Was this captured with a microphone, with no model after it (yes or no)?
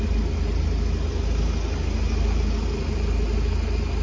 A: yes